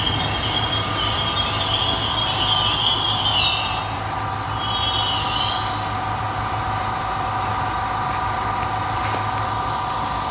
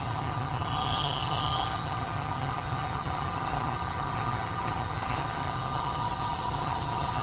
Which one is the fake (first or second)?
second